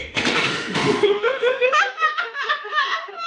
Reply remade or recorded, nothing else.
remade